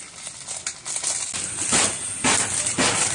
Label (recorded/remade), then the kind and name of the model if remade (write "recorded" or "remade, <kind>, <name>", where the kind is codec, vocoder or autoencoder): recorded